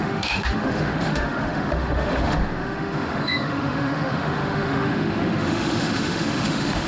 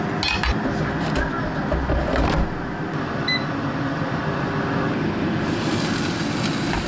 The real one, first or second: second